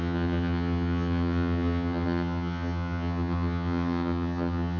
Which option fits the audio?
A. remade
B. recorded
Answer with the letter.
A